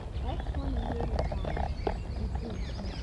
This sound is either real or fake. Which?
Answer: real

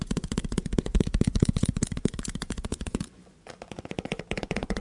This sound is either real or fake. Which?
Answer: fake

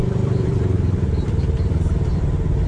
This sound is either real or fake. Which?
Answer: fake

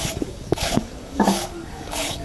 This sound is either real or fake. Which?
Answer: fake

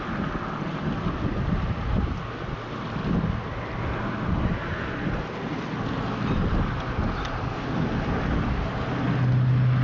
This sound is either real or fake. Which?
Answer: real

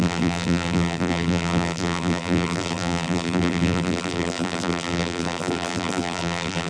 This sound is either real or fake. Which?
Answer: fake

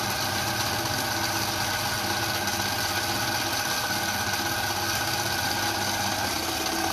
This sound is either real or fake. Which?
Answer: real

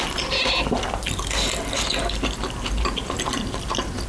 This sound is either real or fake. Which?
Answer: real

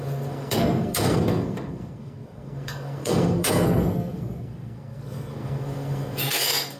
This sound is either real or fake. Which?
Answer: fake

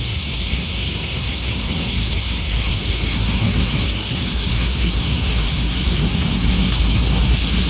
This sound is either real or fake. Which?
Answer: fake